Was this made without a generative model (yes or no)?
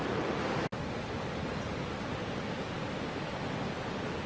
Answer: yes